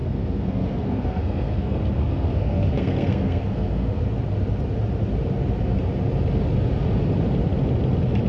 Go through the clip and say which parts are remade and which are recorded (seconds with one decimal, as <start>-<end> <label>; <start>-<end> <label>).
0.0-4.0 remade; 4.0-8.3 recorded